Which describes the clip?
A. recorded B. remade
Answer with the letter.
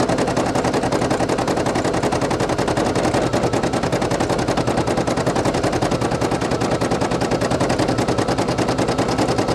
A